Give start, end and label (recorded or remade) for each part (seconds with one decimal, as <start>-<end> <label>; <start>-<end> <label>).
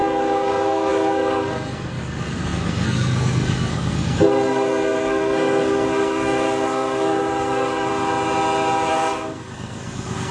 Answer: 0.0-7.9 remade; 7.9-8.9 recorded; 8.9-10.3 remade